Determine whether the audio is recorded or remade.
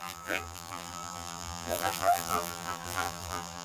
remade